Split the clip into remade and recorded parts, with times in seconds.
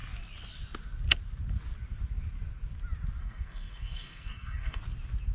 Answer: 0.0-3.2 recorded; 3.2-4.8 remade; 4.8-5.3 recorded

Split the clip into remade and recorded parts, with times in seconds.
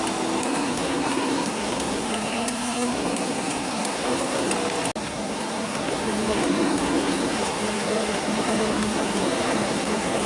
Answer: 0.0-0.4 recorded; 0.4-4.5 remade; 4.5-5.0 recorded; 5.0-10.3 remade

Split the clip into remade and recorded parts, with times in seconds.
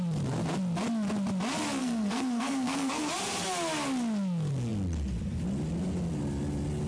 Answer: 0.0-1.8 recorded; 1.8-3.1 remade; 3.1-6.9 recorded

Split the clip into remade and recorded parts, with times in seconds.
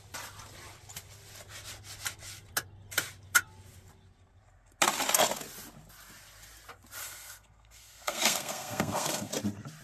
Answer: 0.0-7.0 recorded; 7.0-9.3 remade; 9.3-9.8 recorded